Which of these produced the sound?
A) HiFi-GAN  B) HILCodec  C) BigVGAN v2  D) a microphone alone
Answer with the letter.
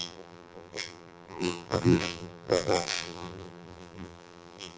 C